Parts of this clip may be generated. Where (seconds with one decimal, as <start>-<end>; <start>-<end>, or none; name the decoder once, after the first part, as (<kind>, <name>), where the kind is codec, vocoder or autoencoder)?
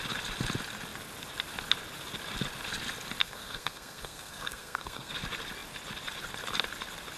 3.2-5.1 (codec, SNAC)